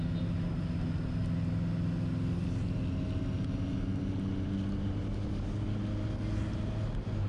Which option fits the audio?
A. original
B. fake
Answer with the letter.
A